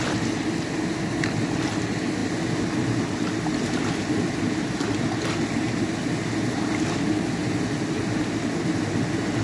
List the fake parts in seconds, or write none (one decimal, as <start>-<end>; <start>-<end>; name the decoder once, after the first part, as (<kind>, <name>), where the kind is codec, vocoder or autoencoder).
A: none